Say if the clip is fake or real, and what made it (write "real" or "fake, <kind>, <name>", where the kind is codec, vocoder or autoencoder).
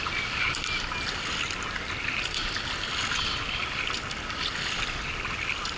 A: real